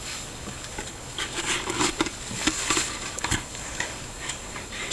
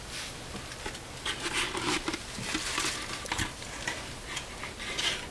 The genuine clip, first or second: second